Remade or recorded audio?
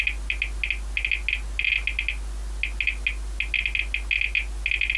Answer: recorded